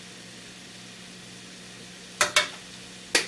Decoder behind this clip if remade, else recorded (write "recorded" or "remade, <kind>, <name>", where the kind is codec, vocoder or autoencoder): recorded